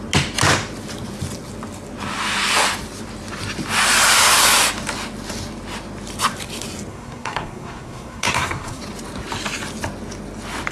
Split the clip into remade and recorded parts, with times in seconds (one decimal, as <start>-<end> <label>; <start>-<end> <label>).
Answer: 0.0-6.9 recorded; 6.9-8.8 remade; 8.8-10.7 recorded

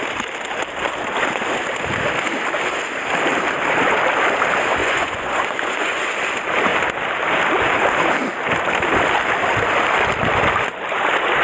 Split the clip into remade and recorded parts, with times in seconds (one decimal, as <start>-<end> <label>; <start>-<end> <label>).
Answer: 0.0-4.8 recorded; 4.8-6.0 remade; 6.0-11.4 recorded

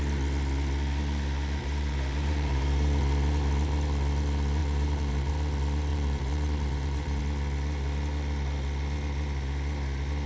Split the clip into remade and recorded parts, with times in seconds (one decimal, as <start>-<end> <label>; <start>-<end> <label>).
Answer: 0.0-1.6 recorded; 1.6-3.0 remade; 3.0-4.6 recorded; 4.6-5.3 remade; 5.3-5.9 recorded; 5.9-7.2 remade; 7.2-10.3 recorded

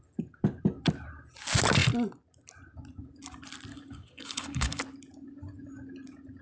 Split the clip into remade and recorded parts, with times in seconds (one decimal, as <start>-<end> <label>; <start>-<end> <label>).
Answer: 0.0-3.7 recorded; 3.7-4.8 remade; 4.8-6.4 recorded

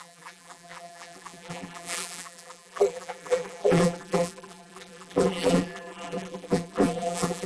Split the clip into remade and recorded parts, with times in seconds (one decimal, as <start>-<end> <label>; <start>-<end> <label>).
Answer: 0.0-7.5 remade

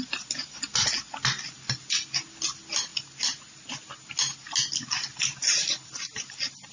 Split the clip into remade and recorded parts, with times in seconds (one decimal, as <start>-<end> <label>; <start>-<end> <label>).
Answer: 0.0-6.7 recorded

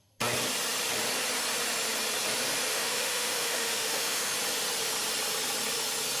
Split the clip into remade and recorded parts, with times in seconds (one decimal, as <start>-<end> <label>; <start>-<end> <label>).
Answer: 0.0-2.7 recorded; 2.7-4.3 remade; 4.3-6.2 recorded

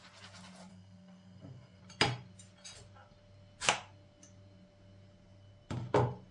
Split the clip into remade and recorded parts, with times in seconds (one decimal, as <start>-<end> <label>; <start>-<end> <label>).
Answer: 0.0-0.7 recorded; 0.7-1.8 remade; 1.8-6.3 recorded